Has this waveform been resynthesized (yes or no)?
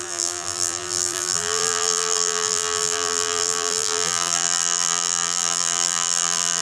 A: yes